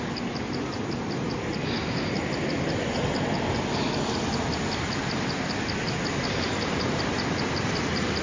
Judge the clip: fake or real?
real